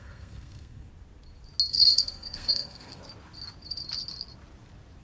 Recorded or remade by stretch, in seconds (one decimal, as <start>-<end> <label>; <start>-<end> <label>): 0.0-0.9 remade; 0.9-1.7 recorded; 1.7-3.0 remade; 3.0-5.0 recorded